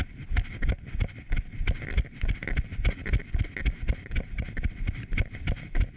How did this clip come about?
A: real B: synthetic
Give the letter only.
A